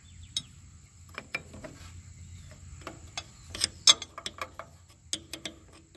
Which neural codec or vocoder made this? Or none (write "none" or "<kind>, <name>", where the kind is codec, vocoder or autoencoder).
none